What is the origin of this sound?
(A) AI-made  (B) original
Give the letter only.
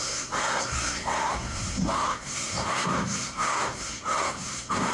A